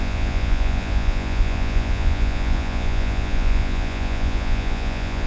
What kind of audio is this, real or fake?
fake